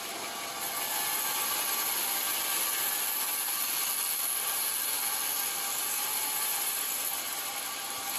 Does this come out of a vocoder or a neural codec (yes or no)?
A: no